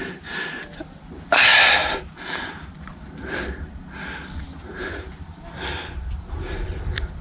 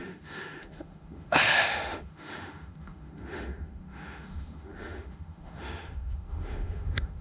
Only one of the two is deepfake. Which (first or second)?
second